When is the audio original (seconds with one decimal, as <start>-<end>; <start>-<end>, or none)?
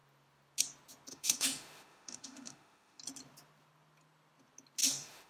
0.0-1.1; 3.0-4.8